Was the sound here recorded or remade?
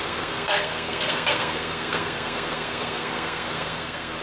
remade